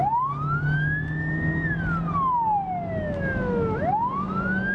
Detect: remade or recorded recorded